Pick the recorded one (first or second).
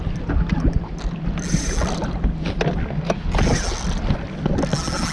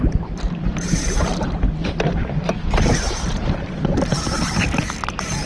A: first